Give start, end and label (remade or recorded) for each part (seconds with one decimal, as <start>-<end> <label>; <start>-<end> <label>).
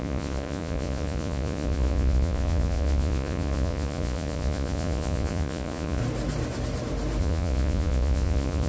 0.0-6.0 remade; 6.0-7.2 recorded; 7.2-8.7 remade